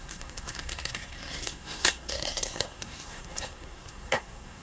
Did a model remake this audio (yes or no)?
yes